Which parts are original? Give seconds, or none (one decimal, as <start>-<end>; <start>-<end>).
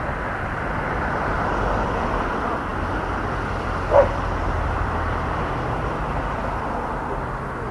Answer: 0.0-7.7